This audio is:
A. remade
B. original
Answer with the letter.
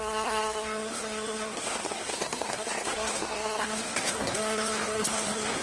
A